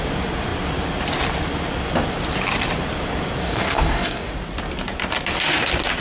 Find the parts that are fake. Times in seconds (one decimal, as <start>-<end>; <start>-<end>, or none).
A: 3.4-4.3